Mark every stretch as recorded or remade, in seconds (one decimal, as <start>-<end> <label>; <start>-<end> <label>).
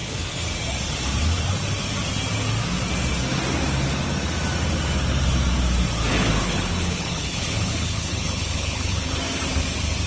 0.0-6.1 recorded; 6.1-9.1 remade; 9.1-10.1 recorded